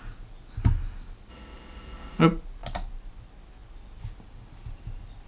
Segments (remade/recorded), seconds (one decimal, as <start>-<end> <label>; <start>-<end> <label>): 0.0-1.3 recorded; 1.3-2.2 remade; 2.2-5.3 recorded